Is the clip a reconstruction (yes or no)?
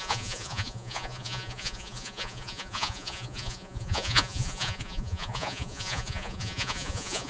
yes